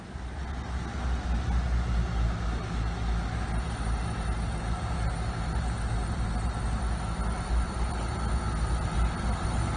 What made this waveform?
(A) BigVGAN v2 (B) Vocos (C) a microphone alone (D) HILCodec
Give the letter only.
C